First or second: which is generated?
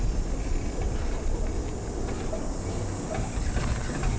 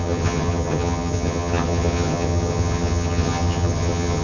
second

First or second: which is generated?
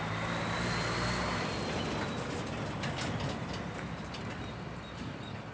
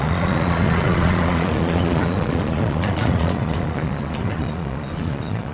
second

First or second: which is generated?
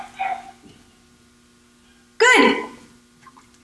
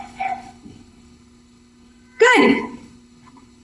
second